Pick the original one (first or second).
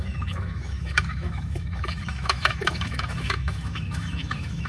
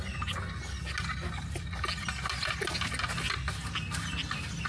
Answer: second